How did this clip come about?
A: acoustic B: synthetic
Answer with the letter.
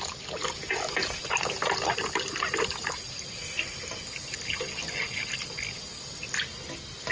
A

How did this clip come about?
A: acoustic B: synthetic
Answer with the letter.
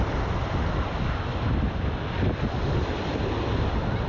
A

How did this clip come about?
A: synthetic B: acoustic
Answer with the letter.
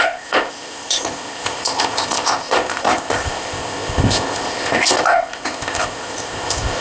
A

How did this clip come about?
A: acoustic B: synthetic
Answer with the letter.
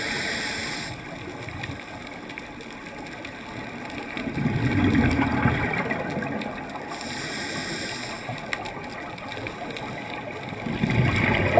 A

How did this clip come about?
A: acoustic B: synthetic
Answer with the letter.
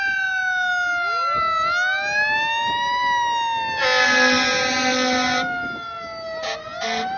A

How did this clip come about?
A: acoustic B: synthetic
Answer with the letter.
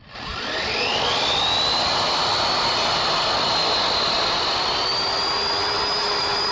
A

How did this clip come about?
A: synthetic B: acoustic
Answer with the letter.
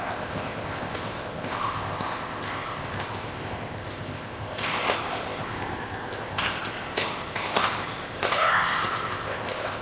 A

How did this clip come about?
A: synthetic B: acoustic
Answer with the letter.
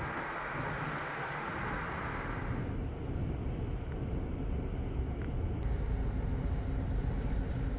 B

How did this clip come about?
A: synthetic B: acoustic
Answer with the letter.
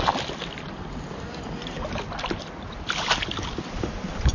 B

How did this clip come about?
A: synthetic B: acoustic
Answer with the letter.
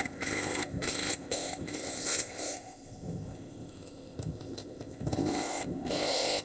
A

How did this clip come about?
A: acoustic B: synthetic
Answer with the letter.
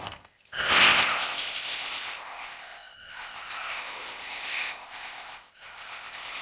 B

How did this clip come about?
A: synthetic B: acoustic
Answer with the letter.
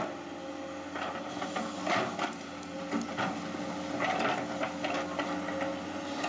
B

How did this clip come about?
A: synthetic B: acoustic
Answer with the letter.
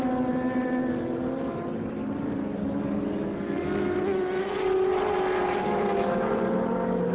B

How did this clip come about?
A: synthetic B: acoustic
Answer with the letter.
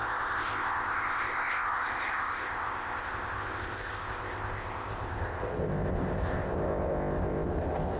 A